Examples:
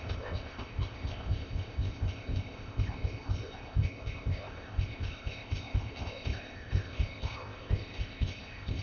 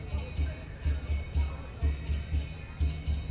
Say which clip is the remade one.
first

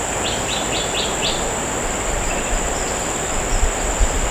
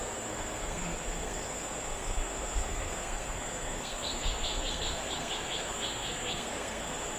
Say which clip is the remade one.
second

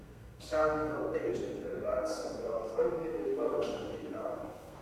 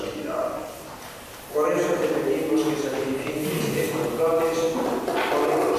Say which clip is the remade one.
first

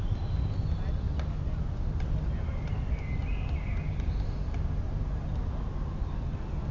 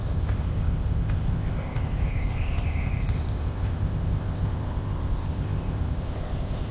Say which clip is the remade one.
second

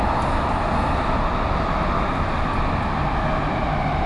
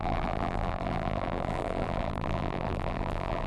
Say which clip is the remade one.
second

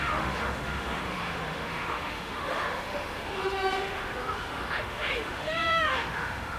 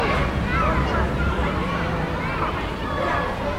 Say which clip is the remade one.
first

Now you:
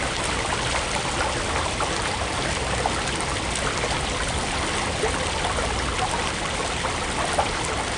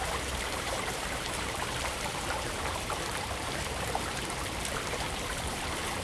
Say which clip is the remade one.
second